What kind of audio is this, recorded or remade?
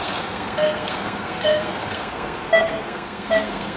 remade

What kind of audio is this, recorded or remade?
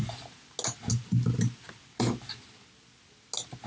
recorded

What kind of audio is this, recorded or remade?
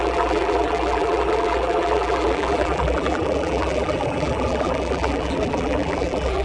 remade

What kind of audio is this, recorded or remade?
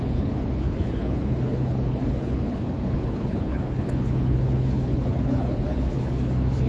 remade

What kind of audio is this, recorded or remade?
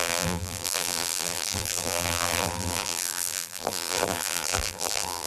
remade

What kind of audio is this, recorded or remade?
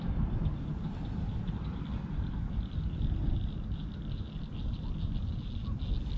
recorded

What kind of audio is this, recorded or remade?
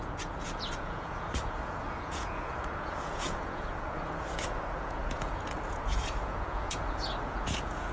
remade